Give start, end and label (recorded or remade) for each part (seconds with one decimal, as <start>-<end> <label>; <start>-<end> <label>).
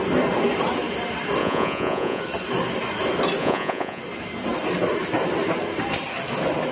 0.0-1.4 recorded; 1.4-2.2 remade; 2.2-3.4 recorded; 3.4-4.0 remade; 4.0-6.7 recorded